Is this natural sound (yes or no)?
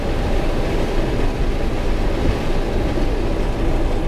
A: yes